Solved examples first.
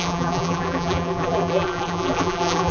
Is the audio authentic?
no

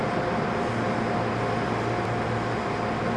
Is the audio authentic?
yes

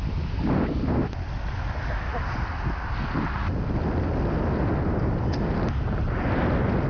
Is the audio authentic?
yes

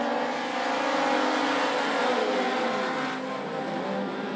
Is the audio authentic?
yes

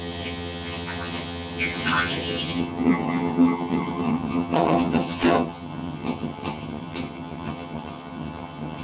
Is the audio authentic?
no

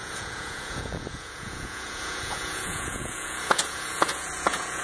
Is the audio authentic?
no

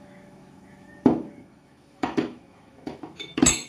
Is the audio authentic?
no